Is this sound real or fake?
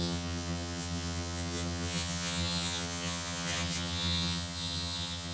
fake